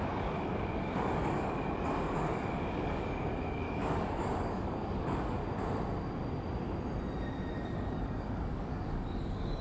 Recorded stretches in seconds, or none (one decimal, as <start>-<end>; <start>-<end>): 5.4-7.5